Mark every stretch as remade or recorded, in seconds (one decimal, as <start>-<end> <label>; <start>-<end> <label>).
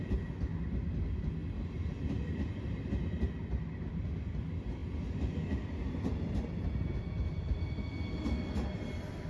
0.0-9.3 recorded